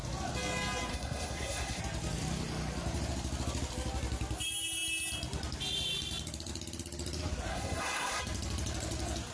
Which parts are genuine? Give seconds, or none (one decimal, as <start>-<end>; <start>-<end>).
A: 0.0-0.9; 1.8-7.5; 8.2-9.3